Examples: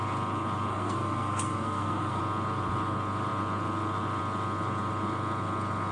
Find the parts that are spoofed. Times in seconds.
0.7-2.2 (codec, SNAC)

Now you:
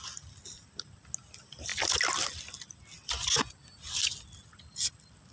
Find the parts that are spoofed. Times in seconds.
none

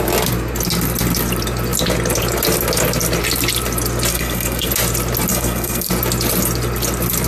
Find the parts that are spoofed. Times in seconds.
4.1-4.7 (codec, SNAC); 5.3-5.9

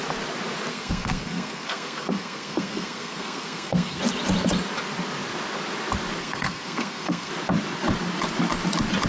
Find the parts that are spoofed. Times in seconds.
0.7-4.0 (codec, SNAC); 6.2-7.3

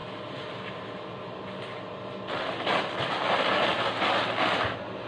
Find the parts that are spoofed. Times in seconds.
none

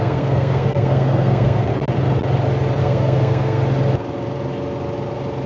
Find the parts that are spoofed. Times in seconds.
0.0-1.7 (codec, SNAC); 2.8-3.6